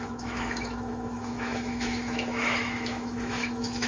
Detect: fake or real fake